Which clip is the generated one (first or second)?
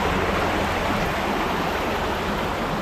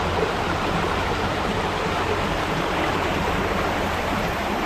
second